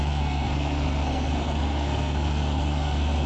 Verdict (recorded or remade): remade